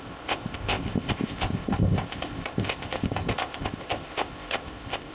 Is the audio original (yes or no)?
no